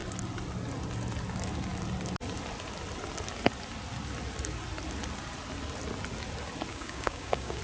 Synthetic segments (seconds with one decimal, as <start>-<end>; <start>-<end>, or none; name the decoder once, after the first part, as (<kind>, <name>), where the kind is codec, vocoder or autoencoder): 6.7-7.6 (codec, DAC)